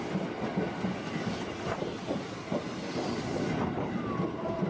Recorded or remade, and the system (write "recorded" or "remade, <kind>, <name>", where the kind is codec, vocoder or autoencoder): recorded